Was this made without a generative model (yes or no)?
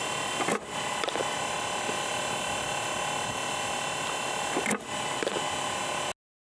yes